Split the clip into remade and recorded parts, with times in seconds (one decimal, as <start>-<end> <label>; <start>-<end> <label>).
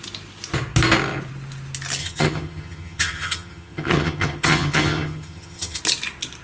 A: 0.0-2.0 recorded; 2.0-5.8 remade; 5.8-6.4 recorded